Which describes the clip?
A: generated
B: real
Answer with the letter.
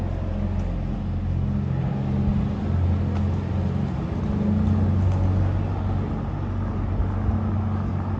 B